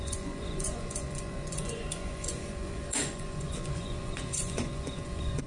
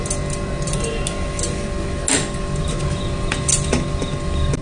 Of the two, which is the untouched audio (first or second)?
second